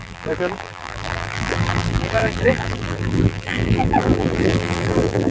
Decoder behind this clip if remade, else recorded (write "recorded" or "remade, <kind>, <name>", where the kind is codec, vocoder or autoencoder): remade, vocoder, BigVGAN v2